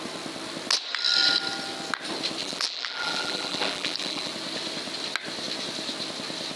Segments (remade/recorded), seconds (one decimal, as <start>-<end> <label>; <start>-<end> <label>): 0.0-2.4 recorded; 2.4-4.3 remade; 4.3-6.6 recorded